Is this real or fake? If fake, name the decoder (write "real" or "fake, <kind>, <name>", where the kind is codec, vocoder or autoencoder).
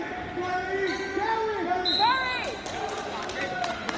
real